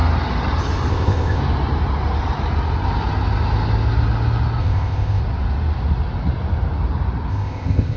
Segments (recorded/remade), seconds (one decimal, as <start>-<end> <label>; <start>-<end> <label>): 0.0-0.9 recorded; 0.9-1.4 remade; 1.4-4.6 recorded; 4.6-5.2 remade; 5.2-7.3 recorded; 7.3-8.0 remade